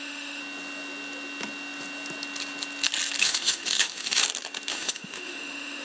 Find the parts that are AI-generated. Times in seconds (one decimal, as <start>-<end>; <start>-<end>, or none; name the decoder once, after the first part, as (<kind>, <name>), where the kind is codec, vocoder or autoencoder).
0.0-0.4 (autoencoder, DAC-VAE); 3.2-4.2; 4.7-5.8